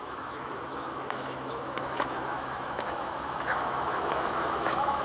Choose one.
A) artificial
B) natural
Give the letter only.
A